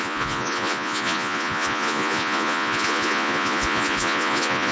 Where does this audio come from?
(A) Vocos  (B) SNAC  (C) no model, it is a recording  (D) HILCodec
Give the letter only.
A